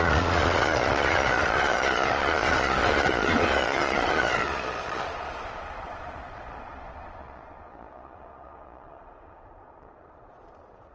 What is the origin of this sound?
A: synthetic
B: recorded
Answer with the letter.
A